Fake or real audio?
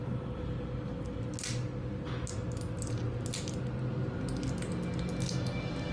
real